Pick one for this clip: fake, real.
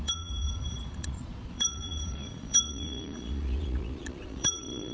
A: fake